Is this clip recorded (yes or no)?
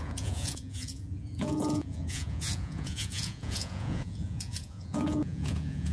no